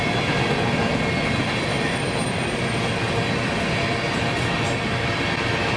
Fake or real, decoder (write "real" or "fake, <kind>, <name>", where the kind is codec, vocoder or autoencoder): real